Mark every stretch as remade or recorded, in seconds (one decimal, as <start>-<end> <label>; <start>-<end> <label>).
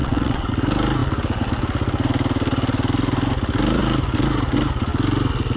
0.0-0.5 remade; 0.5-5.6 recorded